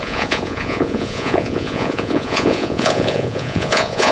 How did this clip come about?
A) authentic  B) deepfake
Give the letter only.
B